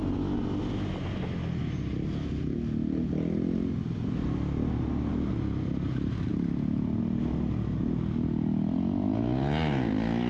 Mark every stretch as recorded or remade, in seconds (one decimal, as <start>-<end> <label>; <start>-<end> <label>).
0.0-10.3 recorded